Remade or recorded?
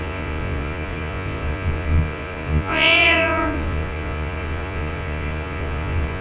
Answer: remade